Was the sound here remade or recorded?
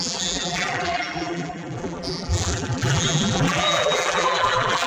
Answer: remade